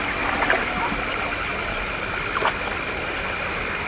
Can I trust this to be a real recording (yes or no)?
yes